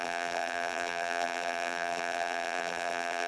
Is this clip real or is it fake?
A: fake